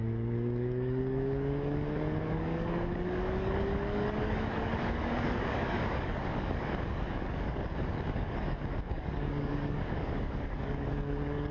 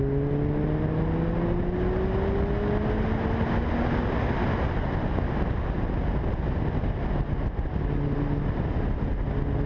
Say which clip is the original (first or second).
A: second